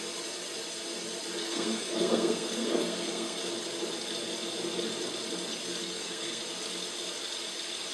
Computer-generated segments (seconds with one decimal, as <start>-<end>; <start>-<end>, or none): 1.4-3.4; 5.8-6.4